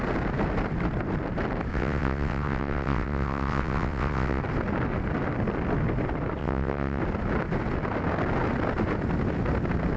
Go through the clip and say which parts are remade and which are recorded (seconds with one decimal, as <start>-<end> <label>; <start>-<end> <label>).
0.0-1.7 recorded; 1.7-4.4 remade; 4.4-6.4 recorded; 6.4-7.0 remade; 7.0-10.0 recorded